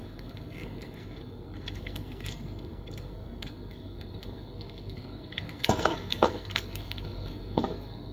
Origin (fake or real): fake